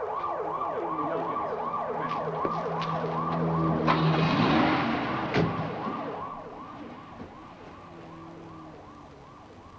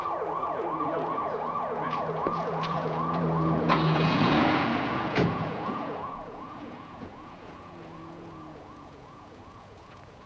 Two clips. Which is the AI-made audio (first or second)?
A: second